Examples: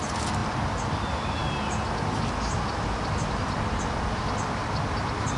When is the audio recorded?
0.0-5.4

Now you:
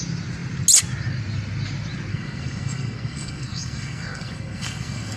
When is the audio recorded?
0.0-2.1

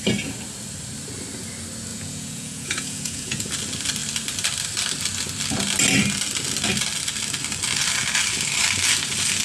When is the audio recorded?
0.0-1.9; 3.5-9.4